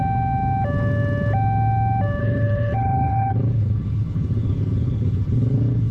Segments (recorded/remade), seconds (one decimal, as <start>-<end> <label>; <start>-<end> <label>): 0.0-2.2 recorded; 2.2-5.9 remade